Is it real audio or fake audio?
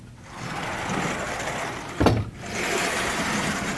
real